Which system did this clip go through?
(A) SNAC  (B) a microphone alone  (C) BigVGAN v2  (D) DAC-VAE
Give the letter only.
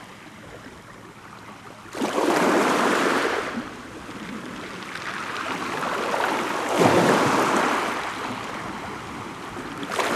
B